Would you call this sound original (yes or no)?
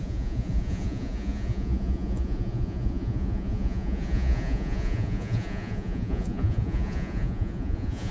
no